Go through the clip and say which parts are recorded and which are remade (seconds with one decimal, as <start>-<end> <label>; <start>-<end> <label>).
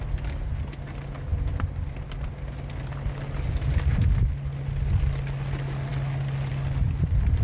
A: 0.0-7.4 recorded